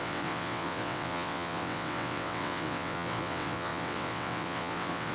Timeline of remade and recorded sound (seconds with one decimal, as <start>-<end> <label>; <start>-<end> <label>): 0.0-5.1 remade